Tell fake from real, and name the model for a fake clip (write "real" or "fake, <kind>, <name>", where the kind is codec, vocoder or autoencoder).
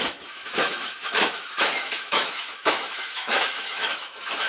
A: fake, autoencoder, DAC-VAE